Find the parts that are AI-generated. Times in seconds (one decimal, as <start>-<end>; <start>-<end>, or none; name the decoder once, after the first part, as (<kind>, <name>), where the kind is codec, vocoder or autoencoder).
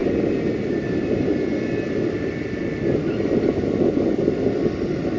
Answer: none